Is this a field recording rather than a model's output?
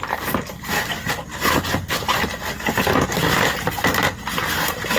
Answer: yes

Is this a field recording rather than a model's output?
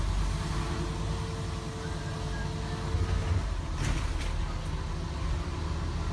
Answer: yes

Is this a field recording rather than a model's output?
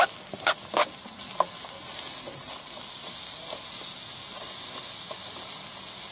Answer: yes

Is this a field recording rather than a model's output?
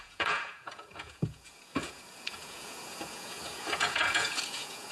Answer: no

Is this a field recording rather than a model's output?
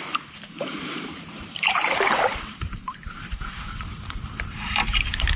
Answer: no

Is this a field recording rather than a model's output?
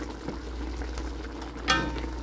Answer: yes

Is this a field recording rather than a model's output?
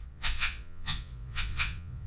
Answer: no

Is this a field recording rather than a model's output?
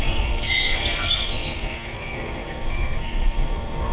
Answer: no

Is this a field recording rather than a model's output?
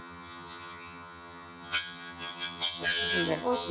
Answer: no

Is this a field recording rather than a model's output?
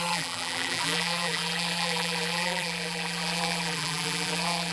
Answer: no